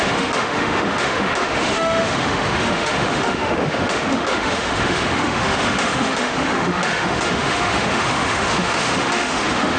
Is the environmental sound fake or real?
fake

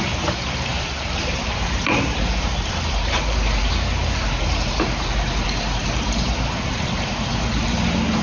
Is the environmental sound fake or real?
fake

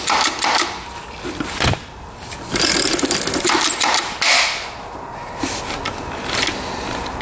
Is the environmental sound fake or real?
real